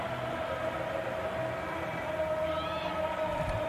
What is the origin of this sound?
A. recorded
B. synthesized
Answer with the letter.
A